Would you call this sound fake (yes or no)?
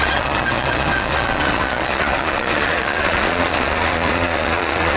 yes